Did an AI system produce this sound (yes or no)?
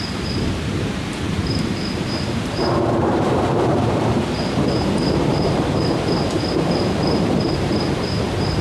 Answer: yes